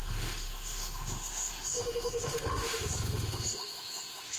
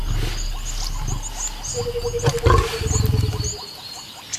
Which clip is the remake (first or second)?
first